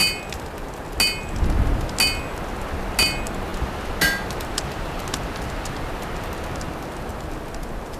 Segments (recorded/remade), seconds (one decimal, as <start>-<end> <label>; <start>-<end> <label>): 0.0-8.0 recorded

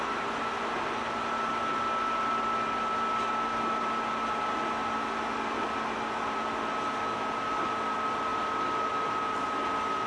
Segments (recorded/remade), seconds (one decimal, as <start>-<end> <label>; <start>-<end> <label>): 0.0-10.1 recorded

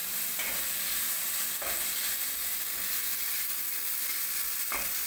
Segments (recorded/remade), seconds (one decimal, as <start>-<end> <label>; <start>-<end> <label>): 0.0-5.1 recorded

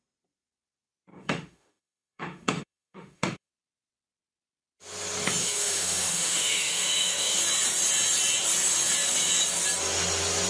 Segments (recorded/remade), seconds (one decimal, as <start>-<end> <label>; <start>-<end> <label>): 0.0-1.1 recorded; 1.1-3.5 remade; 3.5-5.4 recorded; 5.4-7.4 remade; 7.4-10.5 recorded

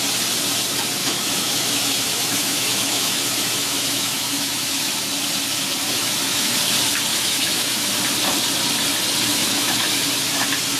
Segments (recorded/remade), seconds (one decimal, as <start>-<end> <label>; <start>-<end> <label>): 0.0-1.0 recorded; 1.0-4.9 remade; 4.9-5.8 recorded; 5.8-6.6 remade; 6.6-7.1 recorded; 7.1-7.9 remade; 7.9-9.3 recorded; 9.3-9.9 remade; 9.9-10.8 recorded